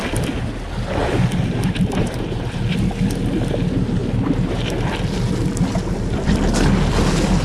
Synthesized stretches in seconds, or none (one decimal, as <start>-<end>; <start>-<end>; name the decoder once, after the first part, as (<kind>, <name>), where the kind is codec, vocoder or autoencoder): 1.0-2.6 (vocoder, BigVGAN v2)

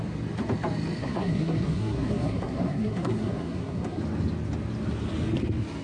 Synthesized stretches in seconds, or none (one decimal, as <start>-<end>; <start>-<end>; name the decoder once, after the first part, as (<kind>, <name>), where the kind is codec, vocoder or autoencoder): 1.0-4.0 (codec, SNAC)

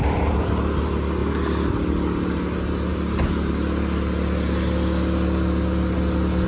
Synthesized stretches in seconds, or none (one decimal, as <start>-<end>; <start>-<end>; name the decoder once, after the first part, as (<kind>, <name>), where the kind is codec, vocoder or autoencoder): none

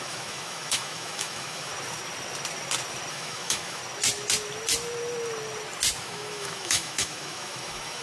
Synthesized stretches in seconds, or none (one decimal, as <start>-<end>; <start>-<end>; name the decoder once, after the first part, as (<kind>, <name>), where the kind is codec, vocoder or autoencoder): 0.0-1.7 (autoencoder, DAC-VAE); 3.1-3.8; 6.0-8.0

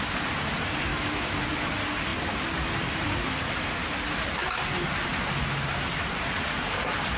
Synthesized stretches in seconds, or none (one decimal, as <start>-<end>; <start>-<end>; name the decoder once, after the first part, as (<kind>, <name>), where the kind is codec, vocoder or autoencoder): 0.9-1.4 (autoencoder, DAC-VAE)

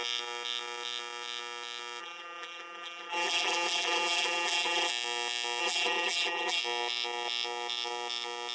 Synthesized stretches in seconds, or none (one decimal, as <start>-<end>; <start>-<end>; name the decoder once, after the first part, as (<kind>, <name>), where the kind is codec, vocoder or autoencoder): 2.0-4.9 (vocoder, BigVGAN v2); 5.6-6.6